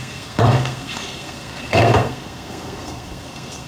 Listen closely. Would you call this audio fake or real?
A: fake